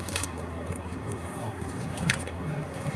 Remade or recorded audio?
remade